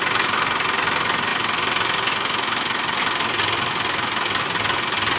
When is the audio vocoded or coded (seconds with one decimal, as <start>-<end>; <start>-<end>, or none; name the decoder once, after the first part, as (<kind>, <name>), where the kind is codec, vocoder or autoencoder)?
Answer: none